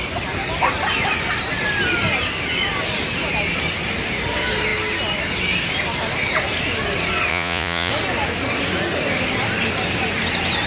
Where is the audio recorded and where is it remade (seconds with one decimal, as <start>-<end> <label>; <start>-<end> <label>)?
0.0-7.3 recorded; 7.3-7.9 remade; 7.9-10.7 recorded